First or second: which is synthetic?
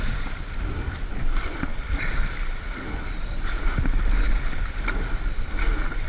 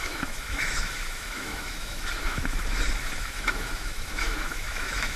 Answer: second